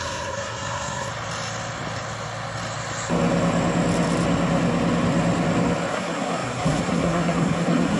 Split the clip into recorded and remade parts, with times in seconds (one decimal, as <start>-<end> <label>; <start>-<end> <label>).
0.0-1.1 remade; 1.1-5.9 recorded; 5.9-8.0 remade